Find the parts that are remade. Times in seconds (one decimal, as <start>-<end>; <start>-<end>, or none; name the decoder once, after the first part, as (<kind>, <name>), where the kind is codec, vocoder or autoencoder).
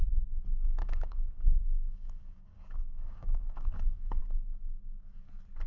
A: 0.8-4.2 (codec, DAC)